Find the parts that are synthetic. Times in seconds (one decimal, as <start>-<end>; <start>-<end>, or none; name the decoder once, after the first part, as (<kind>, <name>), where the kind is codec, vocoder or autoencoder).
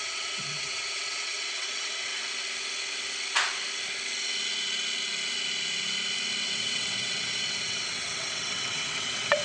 0.0-2.1 (vocoder, WaveNeXt); 6.4-9.4